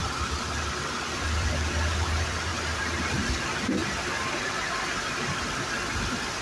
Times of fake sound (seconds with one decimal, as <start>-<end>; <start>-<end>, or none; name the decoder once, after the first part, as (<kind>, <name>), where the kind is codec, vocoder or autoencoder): 0.0-6.4 (vocoder, BigVGAN v2)